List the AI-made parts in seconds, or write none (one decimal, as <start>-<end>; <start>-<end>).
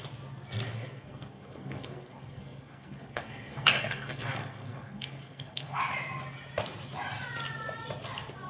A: 0.7-5.8